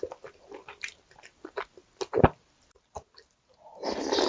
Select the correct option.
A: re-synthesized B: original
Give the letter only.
B